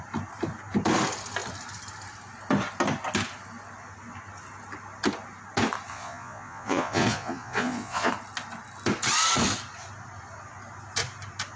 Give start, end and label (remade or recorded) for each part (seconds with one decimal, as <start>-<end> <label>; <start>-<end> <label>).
0.0-5.9 recorded; 5.9-8.1 remade; 8.1-11.6 recorded